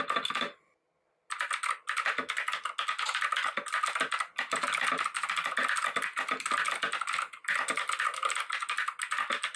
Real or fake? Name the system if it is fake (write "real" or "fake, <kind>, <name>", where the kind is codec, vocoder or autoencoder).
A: real